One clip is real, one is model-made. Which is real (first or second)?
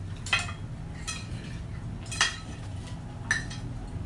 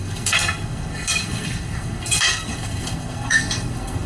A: first